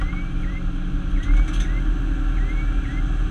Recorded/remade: recorded